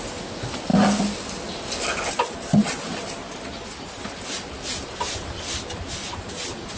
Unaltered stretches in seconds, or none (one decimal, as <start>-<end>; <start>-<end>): 0.0-6.8